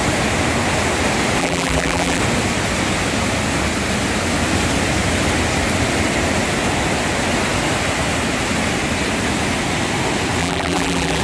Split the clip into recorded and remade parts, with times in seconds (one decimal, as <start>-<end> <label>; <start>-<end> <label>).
0.0-1.4 recorded; 1.4-2.2 remade; 2.2-10.4 recorded; 10.4-11.2 remade